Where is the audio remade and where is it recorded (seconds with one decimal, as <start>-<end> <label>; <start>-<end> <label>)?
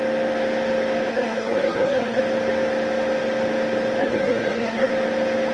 0.0-1.1 recorded; 1.1-2.2 remade; 2.2-4.0 recorded; 4.0-4.9 remade; 4.9-5.5 recorded